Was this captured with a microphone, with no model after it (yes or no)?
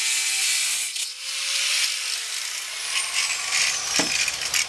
yes